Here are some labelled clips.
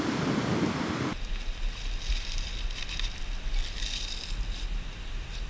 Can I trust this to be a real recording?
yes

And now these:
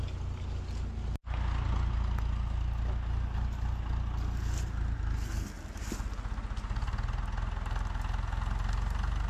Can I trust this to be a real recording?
yes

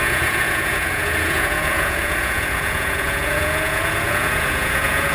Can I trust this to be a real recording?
no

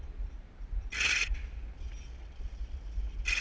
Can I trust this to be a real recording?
yes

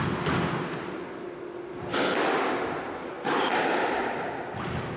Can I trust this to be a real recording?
yes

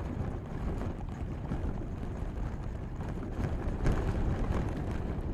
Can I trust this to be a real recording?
yes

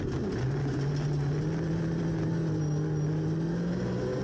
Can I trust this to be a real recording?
yes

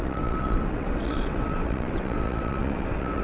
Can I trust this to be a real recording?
no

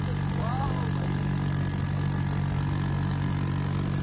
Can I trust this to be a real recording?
yes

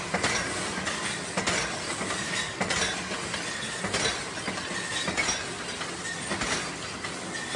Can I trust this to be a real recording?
yes